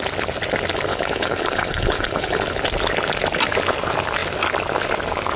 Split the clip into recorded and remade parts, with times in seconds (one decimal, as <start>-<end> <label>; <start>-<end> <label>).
0.0-0.9 recorded; 0.9-2.6 remade; 2.6-5.4 recorded